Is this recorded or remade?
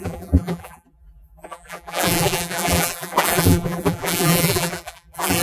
remade